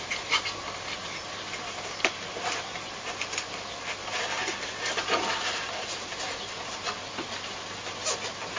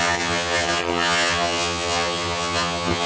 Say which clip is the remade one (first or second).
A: second